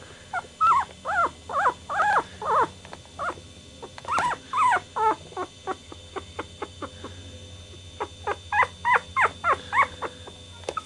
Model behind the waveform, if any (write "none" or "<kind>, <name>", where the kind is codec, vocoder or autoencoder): none